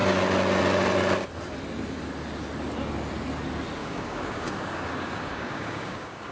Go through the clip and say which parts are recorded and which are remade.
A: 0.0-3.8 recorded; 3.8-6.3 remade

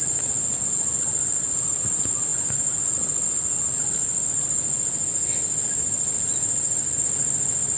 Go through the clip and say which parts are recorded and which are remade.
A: 0.0-7.8 recorded

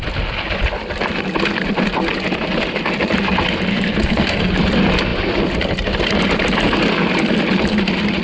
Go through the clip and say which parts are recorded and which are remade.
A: 0.0-3.7 recorded; 3.7-4.5 remade; 4.5-8.2 recorded